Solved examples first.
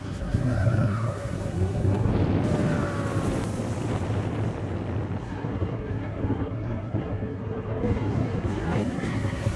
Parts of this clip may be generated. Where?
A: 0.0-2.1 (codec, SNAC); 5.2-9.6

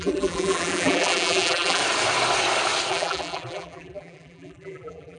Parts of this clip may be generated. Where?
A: 0.0-1.8 (vocoder, BigVGAN v2); 2.9-5.2

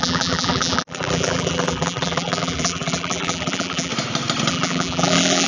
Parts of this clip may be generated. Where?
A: 0.0-3.9 (vocoder, BigVGAN v2); 4.5-5.5